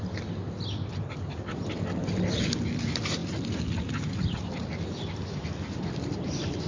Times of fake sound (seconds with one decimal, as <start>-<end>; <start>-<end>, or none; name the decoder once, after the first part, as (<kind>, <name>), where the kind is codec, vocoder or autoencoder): none